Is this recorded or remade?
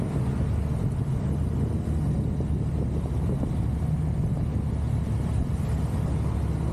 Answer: recorded